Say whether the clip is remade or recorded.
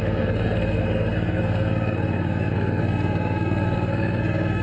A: remade